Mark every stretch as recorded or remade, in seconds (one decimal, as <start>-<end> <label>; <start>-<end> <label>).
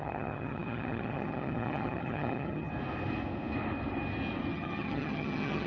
0.0-2.7 remade; 2.7-4.5 recorded; 4.5-5.7 remade